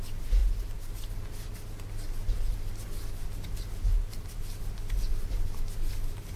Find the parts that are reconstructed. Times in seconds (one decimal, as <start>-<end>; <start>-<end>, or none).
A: 3.9-4.6; 5.1-5.6